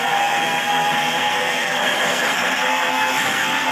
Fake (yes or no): yes